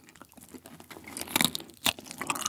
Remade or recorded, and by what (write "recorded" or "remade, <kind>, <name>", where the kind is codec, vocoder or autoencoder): recorded